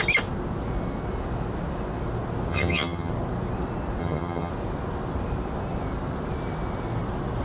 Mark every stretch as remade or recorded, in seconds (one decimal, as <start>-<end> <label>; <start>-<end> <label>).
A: 0.0-2.5 recorded; 2.5-3.1 remade; 3.1-4.0 recorded; 4.0-4.5 remade; 4.5-7.4 recorded